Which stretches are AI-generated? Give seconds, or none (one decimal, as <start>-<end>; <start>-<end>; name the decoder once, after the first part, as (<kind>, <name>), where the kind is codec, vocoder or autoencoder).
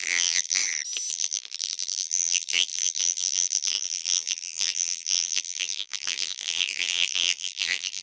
0.0-0.6 (vocoder, BigVGAN v2); 1.1-8.0